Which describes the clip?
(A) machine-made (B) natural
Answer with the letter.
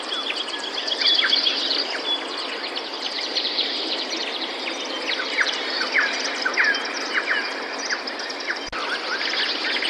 B